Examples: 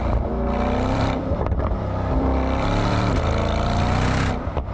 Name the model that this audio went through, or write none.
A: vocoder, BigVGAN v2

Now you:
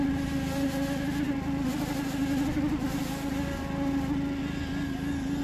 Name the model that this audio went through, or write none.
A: none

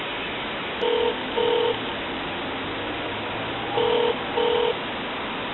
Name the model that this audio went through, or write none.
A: none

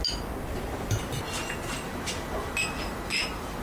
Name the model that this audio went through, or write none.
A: none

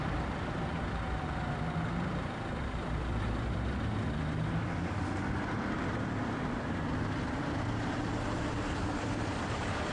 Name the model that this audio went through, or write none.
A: vocoder, BigVGAN v2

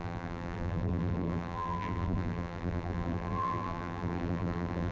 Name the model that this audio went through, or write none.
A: vocoder, BigVGAN v2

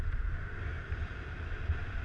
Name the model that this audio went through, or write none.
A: none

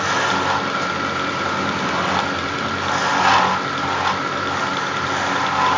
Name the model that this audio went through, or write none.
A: none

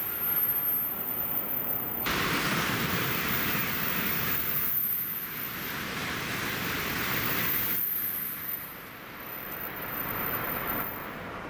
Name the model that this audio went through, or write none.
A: vocoder, BigVGAN v2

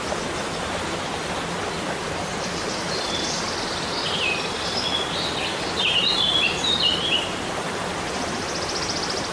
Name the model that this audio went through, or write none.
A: vocoder, BigVGAN v2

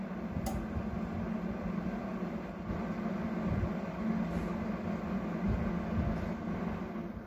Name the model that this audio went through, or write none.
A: none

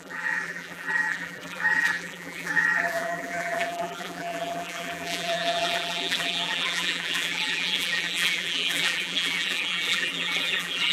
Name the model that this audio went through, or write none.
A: vocoder, BigVGAN v2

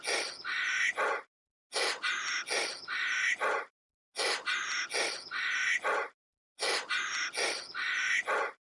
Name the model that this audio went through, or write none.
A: none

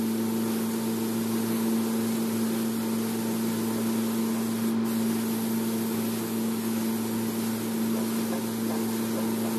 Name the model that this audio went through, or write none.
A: none